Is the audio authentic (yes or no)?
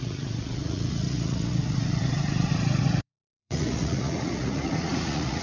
no